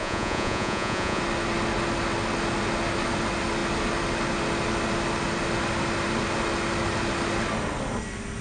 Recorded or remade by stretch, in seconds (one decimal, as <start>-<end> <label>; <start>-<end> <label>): 0.0-1.2 remade; 1.2-8.4 recorded